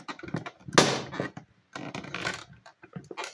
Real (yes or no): yes